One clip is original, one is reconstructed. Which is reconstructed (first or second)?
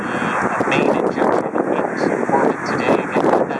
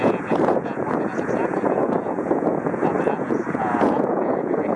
second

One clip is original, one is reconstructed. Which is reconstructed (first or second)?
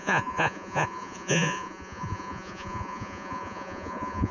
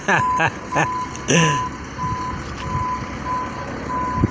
first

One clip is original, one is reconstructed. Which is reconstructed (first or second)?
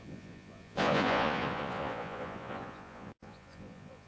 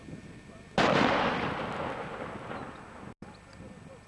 first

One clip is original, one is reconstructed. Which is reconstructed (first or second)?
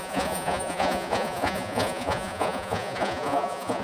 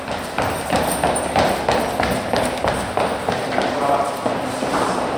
first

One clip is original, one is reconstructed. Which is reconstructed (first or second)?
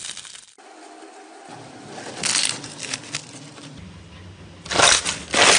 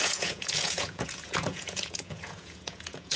second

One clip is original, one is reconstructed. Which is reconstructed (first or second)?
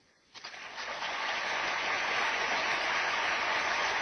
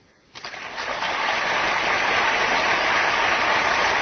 first